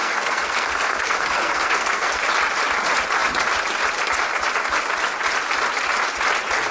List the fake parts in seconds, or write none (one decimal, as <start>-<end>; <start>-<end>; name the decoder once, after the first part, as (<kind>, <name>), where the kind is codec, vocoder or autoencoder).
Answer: 0.0-2.2 (codec, SNAC)